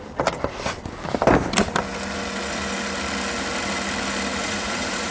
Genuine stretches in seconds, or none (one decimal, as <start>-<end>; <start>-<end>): 0.0-4.4